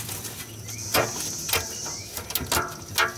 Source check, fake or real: real